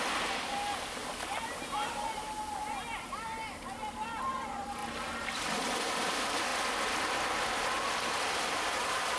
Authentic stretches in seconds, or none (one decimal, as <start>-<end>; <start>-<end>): 0.0-9.2